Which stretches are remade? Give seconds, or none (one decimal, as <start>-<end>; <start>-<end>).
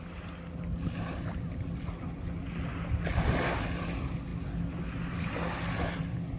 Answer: none